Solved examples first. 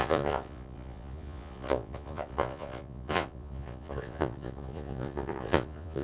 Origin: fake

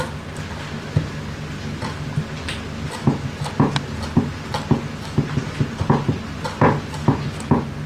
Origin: real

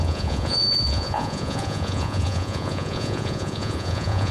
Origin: fake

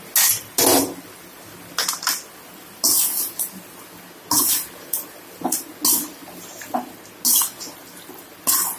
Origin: real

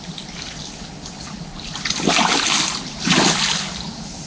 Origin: real